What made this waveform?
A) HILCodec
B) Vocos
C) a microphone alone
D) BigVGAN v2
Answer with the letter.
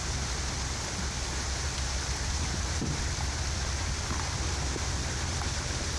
C